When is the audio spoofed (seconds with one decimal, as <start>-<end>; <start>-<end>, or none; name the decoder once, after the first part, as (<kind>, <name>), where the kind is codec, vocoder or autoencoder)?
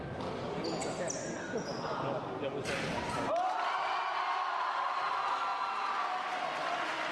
none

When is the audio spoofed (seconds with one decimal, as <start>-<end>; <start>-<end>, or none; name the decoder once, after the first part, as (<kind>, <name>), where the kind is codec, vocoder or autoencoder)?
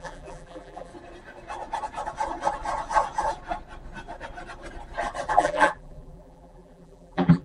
0.0-0.9 (vocoder, BigVGAN v2); 5.3-7.4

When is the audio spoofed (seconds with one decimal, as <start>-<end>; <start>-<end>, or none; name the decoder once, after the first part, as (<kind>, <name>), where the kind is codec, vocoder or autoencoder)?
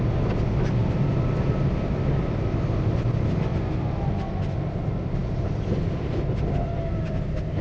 3.5-4.1 (vocoder, BigVGAN v2)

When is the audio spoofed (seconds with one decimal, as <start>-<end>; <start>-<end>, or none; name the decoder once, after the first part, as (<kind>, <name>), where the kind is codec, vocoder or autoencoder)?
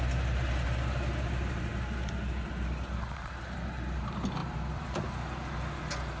4.4-5.0 (vocoder, BigVGAN v2)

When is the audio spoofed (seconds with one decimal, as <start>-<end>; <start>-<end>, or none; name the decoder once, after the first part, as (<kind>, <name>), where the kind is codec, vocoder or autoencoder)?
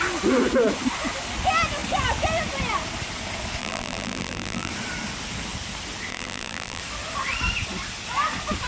3.6-4.7 (vocoder, BigVGAN v2); 6.1-6.8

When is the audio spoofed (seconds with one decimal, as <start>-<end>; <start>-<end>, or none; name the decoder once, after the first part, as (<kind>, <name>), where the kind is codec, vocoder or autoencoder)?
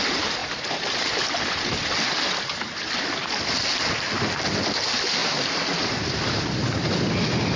none